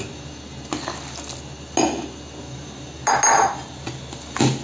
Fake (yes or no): no